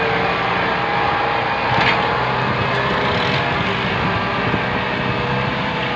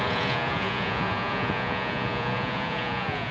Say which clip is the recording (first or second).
first